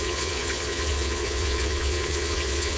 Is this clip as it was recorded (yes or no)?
no